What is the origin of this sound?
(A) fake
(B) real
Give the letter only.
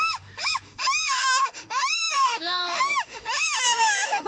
A